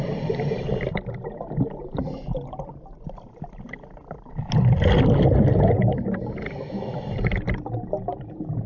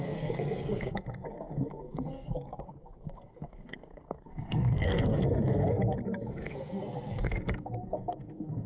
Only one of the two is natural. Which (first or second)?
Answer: first